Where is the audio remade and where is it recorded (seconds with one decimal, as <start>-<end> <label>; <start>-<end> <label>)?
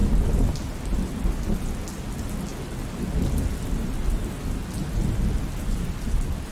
0.0-6.5 recorded